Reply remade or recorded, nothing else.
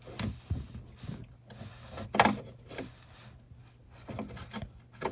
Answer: recorded